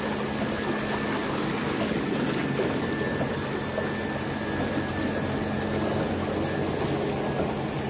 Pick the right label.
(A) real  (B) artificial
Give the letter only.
A